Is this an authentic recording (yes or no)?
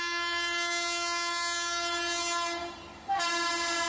yes